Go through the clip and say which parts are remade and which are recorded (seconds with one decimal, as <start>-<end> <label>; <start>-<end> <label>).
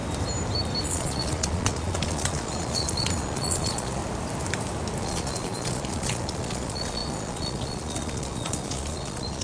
0.0-0.8 recorded; 0.8-4.0 remade; 4.0-5.0 recorded; 5.0-9.4 remade